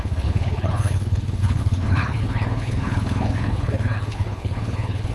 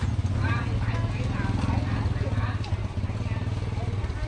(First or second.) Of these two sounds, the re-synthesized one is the first